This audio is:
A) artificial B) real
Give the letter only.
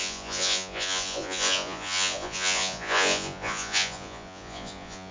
A